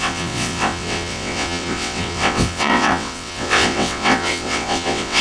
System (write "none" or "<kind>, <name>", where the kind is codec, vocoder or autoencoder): vocoder, WaveNeXt